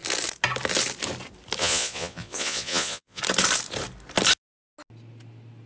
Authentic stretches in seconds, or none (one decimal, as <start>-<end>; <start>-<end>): 0.0-1.6; 3.2-5.7